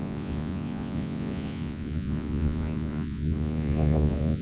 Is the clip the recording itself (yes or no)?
no